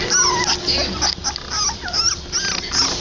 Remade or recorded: recorded